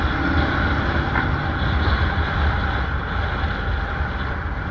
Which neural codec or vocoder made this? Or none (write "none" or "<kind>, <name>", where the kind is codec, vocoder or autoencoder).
none